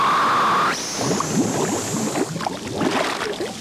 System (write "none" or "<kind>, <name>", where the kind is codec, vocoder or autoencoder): none